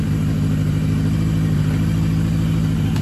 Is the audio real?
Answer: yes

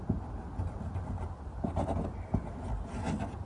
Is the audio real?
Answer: yes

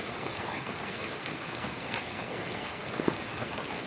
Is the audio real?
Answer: no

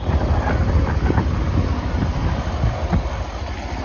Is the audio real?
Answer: yes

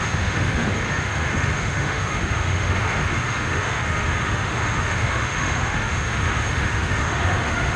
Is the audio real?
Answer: no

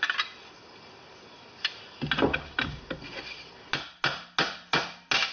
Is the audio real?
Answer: yes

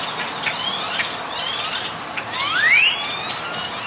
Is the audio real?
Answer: no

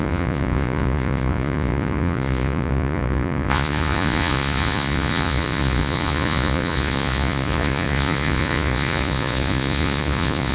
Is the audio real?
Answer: no